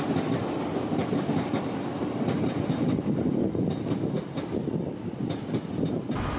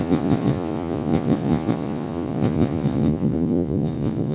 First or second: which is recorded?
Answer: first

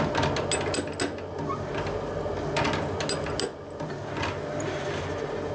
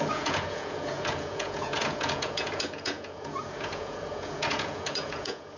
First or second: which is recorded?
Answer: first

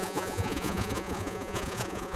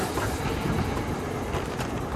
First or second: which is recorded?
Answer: second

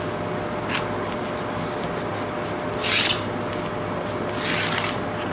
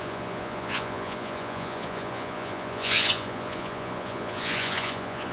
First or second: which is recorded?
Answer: first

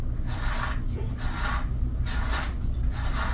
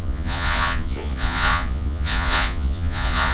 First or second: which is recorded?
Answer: first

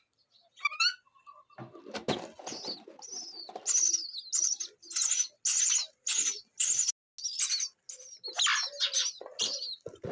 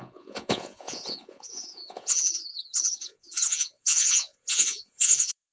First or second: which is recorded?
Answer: first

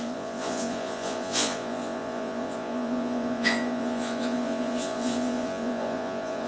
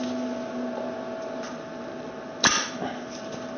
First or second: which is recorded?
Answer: second